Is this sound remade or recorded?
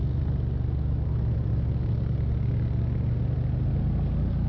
recorded